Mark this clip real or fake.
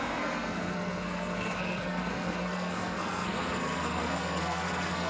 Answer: fake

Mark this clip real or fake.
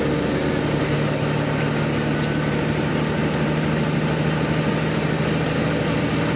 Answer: real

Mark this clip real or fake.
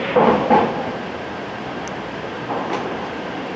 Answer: fake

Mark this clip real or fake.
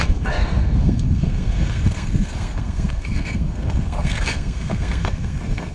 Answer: fake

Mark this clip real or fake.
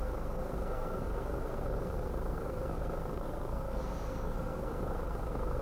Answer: fake